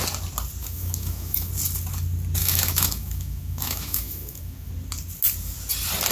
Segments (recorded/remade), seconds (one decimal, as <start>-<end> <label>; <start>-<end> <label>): 0.0-0.6 recorded; 0.6-1.5 remade; 1.5-2.4 recorded; 2.4-4.7 remade; 4.7-6.1 recorded